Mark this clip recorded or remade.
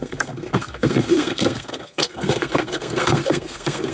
remade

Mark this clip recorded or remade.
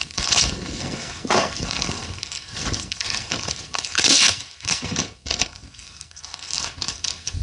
remade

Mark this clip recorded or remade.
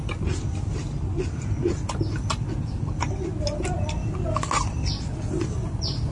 recorded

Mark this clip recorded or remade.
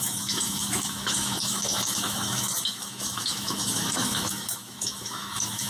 remade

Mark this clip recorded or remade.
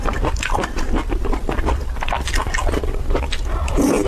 remade